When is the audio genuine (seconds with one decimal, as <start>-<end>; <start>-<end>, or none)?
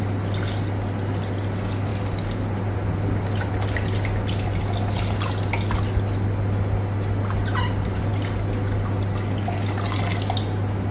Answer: 0.0-10.9